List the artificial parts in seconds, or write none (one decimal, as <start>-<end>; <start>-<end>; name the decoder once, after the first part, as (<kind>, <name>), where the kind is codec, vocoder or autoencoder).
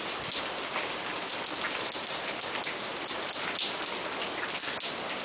none